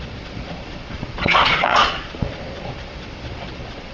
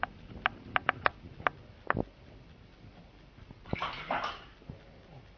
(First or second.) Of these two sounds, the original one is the second